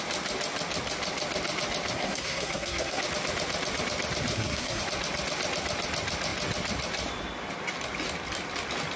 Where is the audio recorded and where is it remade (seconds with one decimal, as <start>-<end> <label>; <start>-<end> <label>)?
0.0-1.9 recorded; 1.9-3.0 remade; 3.0-4.3 recorded; 4.3-4.8 remade; 4.8-9.0 recorded